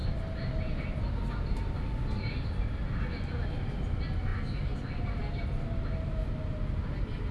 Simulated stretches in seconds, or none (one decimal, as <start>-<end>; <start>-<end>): none